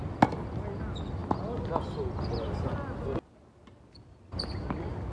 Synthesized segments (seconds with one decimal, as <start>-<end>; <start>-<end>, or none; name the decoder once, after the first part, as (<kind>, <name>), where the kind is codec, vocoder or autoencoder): none